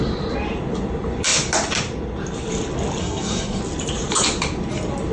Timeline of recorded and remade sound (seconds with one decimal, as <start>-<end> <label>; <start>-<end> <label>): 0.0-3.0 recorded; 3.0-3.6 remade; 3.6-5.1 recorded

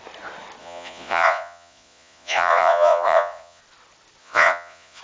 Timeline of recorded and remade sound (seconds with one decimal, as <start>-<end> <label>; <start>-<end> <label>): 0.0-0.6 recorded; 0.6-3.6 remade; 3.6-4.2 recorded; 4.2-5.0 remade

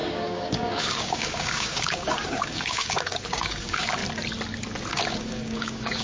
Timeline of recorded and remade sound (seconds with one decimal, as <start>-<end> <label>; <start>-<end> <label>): 0.0-4.0 remade; 4.0-4.9 recorded; 4.9-6.0 remade

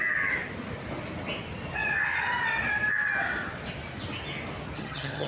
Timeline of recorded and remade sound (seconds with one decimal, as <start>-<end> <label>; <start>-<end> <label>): 0.0-4.8 recorded; 4.8-5.3 remade

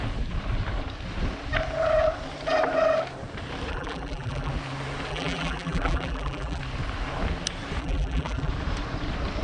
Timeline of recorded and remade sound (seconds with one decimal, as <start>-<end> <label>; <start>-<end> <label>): 0.0-3.7 recorded; 3.7-4.5 remade; 4.5-5.1 recorded; 5.1-6.6 remade; 6.6-7.8 recorded; 7.8-8.5 remade; 8.5-9.4 recorded